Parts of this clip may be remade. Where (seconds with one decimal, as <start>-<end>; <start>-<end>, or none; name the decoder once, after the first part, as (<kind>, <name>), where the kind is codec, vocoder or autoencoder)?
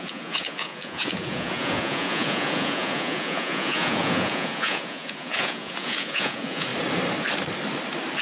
0.0-6.7 (vocoder, Vocos)